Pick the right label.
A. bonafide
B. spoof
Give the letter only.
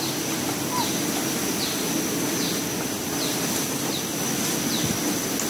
A